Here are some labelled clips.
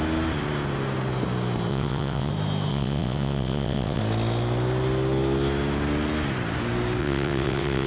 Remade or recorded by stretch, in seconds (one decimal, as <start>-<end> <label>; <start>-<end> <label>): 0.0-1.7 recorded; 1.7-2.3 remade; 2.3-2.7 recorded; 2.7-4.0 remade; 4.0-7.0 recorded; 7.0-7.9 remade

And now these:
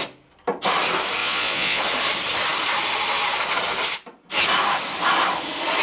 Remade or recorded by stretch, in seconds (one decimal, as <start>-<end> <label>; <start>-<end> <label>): 0.0-1.2 recorded; 1.2-1.8 remade; 1.8-5.8 recorded

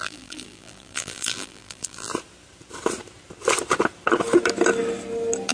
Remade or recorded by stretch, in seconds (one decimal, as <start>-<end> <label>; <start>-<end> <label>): 0.0-2.1 remade; 2.1-5.5 recorded

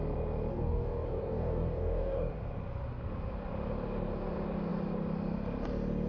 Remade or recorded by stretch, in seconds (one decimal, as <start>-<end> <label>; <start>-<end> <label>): 0.0-0.5 recorded; 0.5-2.3 remade; 2.3-6.1 recorded

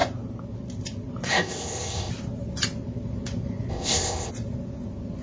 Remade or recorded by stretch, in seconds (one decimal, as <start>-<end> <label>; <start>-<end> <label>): 0.0-1.3 recorded; 1.3-2.1 remade; 2.1-3.7 recorded; 3.7-4.3 remade; 4.3-5.2 recorded

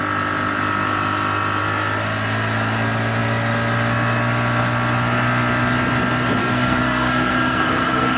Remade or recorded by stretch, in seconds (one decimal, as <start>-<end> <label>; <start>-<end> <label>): 0.0-6.4 recorded; 6.4-8.2 remade

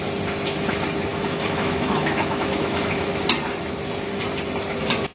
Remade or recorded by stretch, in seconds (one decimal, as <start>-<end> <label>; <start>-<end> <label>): 0.0-1.1 recorded; 1.1-3.1 remade; 3.1-5.1 recorded